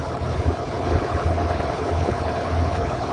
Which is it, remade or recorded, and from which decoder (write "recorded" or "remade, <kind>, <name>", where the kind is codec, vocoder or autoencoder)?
remade, codec, HILCodec